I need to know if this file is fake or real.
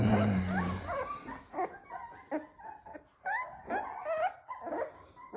real